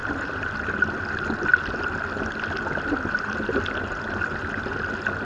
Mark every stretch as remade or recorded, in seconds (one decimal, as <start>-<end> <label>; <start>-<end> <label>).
0.0-1.0 remade; 1.0-5.2 recorded